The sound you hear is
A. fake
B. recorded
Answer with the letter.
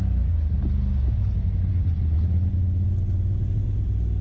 B